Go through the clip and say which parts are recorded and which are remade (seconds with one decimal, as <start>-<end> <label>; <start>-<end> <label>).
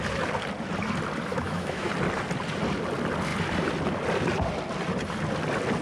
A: 0.0-1.3 recorded; 1.3-1.9 remade; 1.9-5.8 recorded